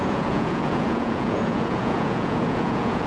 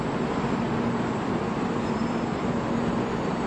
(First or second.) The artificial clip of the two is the first